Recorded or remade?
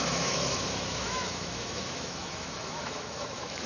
remade